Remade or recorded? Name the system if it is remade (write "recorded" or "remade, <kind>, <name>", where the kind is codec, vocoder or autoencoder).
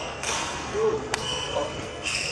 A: remade, codec, SNAC